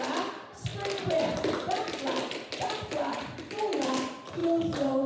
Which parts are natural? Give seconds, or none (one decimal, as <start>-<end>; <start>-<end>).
0.0-5.1